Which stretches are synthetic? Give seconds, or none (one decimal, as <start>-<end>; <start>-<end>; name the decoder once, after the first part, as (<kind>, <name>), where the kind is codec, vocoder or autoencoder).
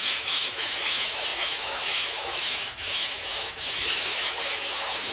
0.0-5.1 (autoencoder, DAC-VAE)